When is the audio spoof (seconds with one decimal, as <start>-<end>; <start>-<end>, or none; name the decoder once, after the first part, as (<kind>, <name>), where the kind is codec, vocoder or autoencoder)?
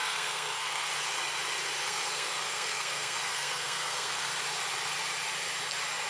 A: 0.0-0.9 (codec, SNAC); 1.8-4.3